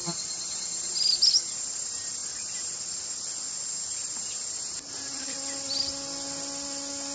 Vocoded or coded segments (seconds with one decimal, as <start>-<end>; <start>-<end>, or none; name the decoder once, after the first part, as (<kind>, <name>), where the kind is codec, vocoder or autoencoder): none